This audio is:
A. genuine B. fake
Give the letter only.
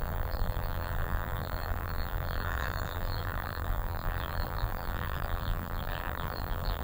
B